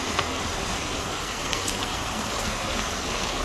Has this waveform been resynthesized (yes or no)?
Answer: yes